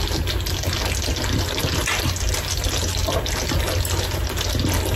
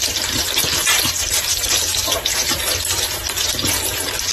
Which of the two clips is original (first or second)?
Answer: first